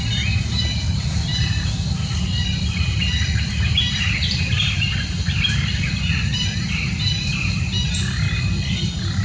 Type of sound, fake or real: real